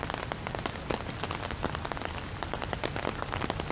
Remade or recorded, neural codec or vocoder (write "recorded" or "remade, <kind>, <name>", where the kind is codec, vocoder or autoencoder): recorded